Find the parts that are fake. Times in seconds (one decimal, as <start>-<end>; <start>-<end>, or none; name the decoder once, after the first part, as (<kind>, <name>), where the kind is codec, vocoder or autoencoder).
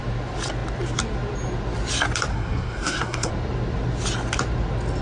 2.3-3.3 (codec, SNAC)